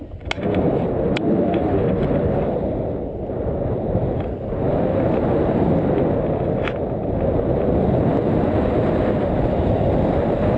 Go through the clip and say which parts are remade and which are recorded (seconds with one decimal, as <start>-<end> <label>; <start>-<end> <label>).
0.0-0.5 recorded; 0.5-2.5 remade; 2.5-10.6 recorded